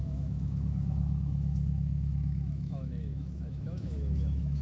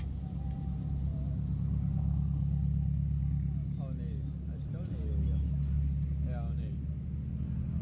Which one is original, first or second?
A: second